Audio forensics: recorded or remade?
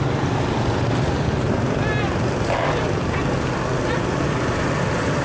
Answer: recorded